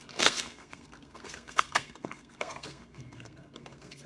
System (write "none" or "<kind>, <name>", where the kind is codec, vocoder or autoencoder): codec, SNAC